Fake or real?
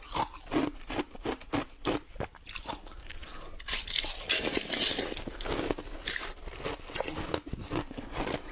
real